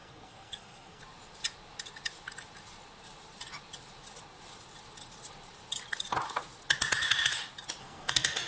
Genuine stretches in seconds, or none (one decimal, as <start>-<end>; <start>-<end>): 1.0-7.8